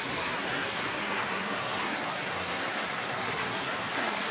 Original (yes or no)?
no